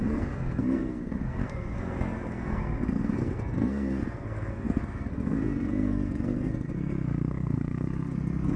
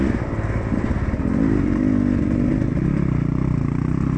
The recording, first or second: second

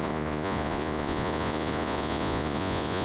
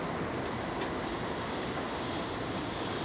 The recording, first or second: second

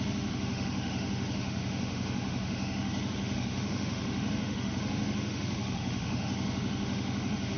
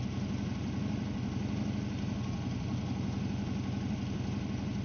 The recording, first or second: second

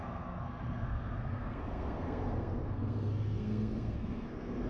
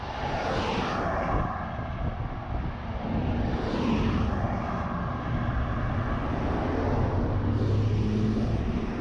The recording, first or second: second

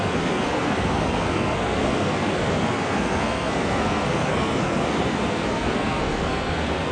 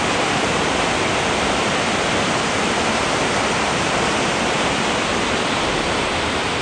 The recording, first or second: second